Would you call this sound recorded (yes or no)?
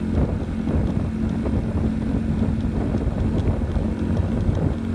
yes